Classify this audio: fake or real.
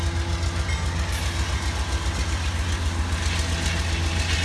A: real